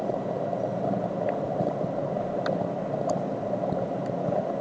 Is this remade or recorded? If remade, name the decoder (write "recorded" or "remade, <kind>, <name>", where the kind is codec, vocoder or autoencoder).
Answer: recorded